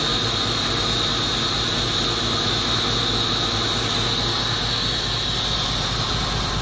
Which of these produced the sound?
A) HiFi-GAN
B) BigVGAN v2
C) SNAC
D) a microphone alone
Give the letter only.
D